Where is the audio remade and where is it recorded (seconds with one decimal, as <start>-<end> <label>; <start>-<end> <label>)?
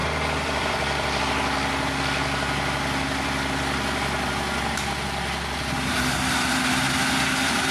0.0-1.2 remade; 1.2-7.7 recorded